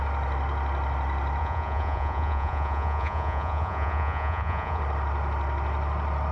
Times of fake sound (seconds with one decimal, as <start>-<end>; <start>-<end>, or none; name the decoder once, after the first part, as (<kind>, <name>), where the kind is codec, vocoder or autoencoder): 1.4-4.8 (vocoder, Vocos)